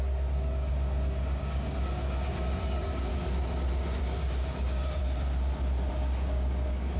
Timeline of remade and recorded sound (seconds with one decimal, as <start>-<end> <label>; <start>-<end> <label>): 0.0-3.1 remade; 3.1-4.0 recorded; 4.0-5.0 remade; 5.0-5.9 recorded; 5.9-7.0 remade